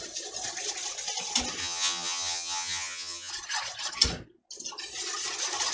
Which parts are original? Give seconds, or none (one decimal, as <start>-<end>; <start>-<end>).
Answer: 0.0-1.6; 3.3-5.7